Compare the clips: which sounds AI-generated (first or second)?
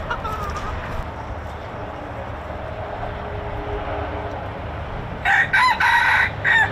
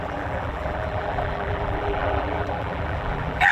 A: second